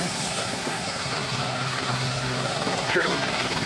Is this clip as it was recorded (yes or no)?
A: no